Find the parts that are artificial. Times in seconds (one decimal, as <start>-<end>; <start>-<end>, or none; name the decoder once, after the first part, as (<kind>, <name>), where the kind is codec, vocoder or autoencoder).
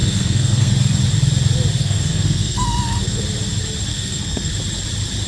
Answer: 0.0-0.7 (codec, SNAC); 1.8-3.2; 3.9-4.5